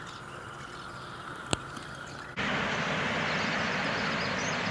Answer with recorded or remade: remade